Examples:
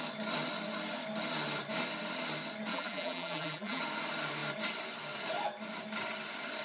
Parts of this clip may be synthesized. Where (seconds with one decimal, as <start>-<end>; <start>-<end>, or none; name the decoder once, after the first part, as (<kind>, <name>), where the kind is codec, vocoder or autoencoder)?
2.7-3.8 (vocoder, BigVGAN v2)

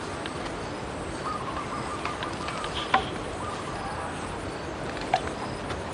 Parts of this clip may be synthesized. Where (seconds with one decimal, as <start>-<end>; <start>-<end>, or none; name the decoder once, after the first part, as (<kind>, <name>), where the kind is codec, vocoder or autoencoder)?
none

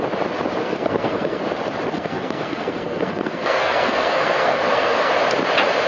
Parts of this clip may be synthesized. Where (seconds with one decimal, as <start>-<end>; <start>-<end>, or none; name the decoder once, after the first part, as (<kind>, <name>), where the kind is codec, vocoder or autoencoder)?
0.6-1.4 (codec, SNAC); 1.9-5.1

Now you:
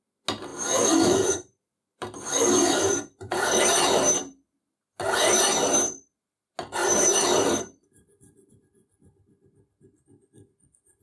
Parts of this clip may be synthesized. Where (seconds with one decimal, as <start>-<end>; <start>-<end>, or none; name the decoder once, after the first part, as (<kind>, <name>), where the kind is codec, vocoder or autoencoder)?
0.5-4.6 (vocoder, BigVGAN v2); 6.8-8.5

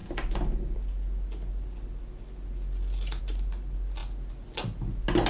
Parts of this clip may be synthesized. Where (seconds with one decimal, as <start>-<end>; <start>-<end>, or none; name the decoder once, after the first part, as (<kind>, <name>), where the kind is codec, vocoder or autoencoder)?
none